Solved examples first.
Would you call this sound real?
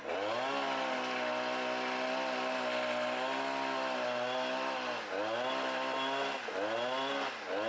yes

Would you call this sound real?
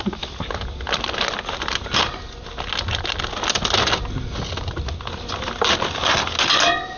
yes